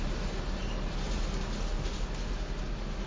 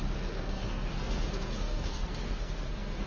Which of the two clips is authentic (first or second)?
first